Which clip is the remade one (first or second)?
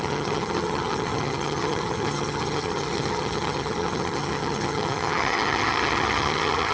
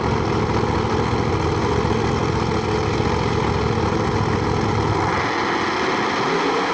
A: first